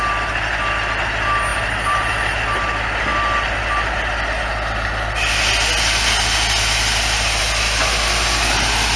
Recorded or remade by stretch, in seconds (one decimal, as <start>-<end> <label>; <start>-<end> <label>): 0.0-1.5 recorded; 1.5-2.6 remade; 2.6-9.0 recorded